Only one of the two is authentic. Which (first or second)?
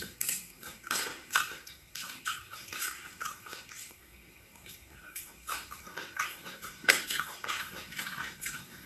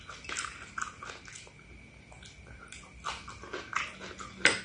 second